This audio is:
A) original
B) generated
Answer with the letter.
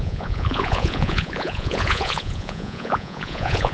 B